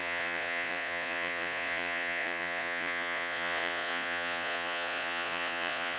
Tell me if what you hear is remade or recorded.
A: remade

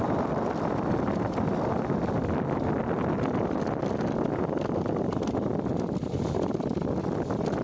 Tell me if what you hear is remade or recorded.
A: recorded